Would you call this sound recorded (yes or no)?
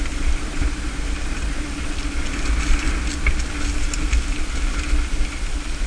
yes